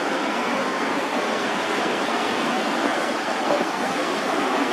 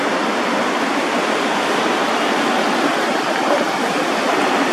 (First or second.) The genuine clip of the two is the second